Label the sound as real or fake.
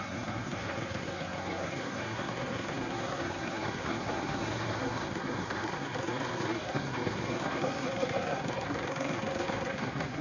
fake